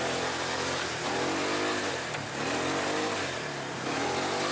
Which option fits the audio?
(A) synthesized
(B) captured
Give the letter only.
B